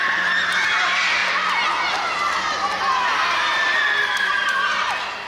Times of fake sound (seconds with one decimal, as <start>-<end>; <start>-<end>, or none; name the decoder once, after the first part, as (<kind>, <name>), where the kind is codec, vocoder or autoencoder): none